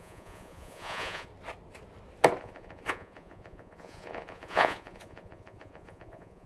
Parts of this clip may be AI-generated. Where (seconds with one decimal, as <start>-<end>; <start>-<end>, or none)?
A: 0.0-1.3; 2.4-6.5